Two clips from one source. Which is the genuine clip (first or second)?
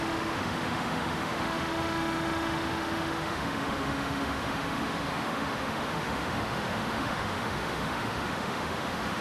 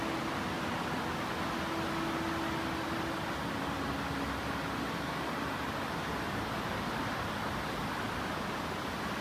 second